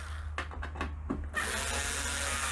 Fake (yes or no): no